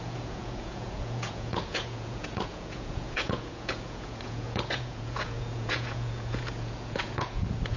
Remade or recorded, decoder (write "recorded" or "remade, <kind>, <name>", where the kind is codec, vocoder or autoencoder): remade, vocoder, Vocos